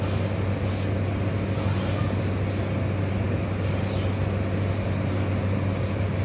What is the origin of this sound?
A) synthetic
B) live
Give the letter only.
B